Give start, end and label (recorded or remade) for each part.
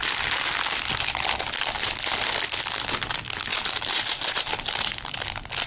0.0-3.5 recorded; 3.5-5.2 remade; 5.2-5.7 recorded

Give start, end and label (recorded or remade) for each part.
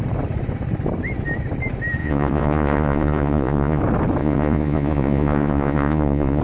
0.0-2.0 recorded; 2.0-3.8 remade; 3.8-4.2 recorded; 4.2-6.4 remade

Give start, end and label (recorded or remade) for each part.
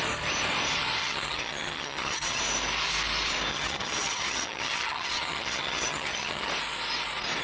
0.0-1.0 recorded; 1.0-2.4 remade; 2.4-3.5 recorded; 3.5-6.5 remade; 6.5-7.4 recorded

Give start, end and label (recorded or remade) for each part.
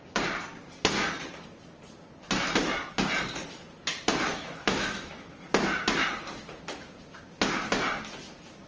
0.0-4.3 recorded; 4.3-5.3 remade; 5.3-8.7 recorded